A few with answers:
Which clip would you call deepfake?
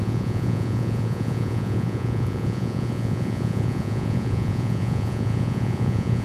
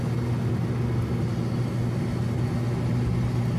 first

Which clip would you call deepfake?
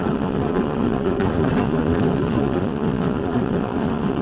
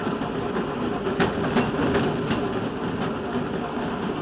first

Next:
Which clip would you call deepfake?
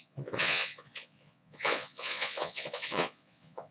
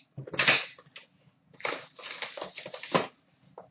first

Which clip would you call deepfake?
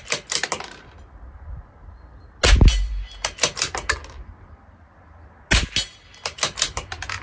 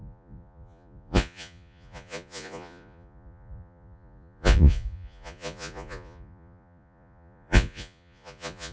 second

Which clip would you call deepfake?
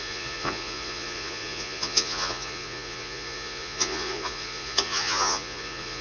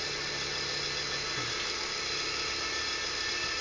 first